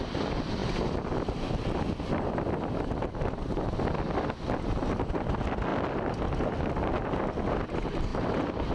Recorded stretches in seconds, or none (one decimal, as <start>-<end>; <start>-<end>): 0.0-8.1